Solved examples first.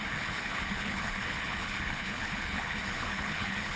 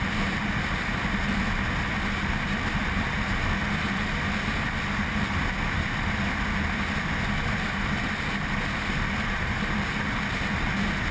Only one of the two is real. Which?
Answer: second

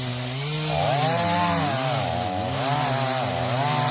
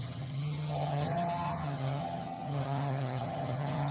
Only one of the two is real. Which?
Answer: first